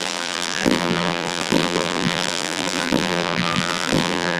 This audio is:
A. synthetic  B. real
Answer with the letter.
A